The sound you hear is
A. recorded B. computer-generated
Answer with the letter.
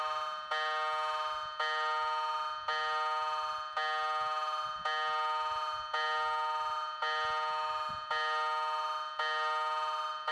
A